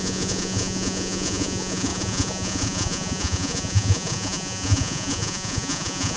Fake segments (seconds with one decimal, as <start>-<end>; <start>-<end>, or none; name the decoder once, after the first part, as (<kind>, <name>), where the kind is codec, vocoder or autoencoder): 0.0-6.2 (vocoder, Vocos)